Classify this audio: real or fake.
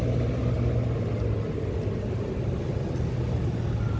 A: real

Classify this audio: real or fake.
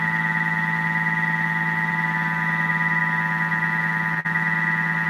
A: real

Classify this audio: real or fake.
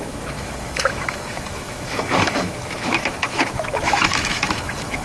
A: fake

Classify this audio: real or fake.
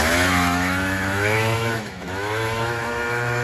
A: fake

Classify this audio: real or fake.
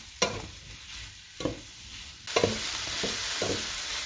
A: real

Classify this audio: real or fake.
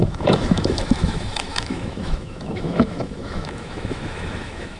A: fake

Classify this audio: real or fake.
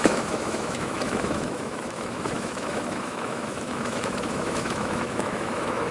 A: fake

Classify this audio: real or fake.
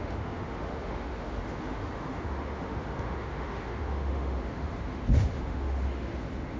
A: fake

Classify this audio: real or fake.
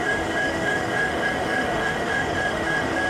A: fake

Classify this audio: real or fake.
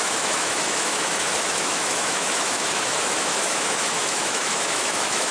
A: fake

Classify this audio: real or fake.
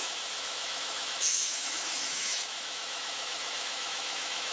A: fake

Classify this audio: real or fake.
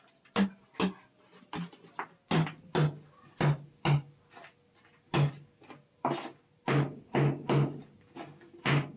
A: real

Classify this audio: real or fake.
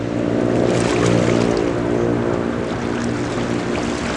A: real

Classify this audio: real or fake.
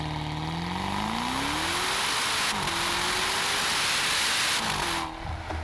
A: real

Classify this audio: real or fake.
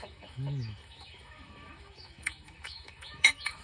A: fake